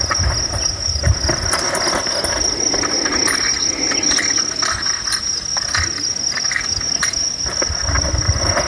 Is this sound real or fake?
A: real